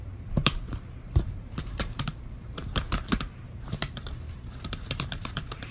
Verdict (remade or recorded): remade